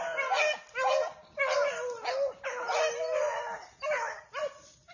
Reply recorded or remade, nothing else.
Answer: recorded